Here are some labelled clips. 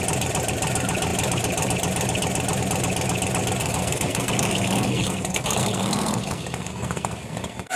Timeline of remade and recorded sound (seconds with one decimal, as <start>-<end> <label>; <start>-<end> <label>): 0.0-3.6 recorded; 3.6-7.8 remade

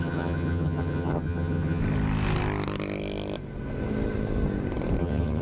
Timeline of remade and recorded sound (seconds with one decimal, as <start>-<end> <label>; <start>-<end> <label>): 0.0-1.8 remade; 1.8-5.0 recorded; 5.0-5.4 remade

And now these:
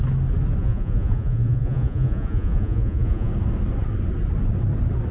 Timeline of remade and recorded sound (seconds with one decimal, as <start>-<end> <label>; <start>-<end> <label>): 0.0-0.6 recorded; 0.6-3.3 remade; 3.3-5.1 recorded

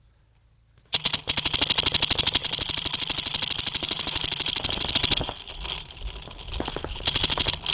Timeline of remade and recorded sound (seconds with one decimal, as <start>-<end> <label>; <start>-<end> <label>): 0.0-2.4 recorded; 2.4-4.9 remade; 4.9-7.7 recorded

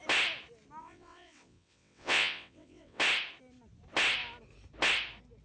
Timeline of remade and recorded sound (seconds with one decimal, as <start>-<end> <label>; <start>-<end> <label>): 0.0-0.8 recorded; 0.8-3.0 remade; 3.0-5.4 recorded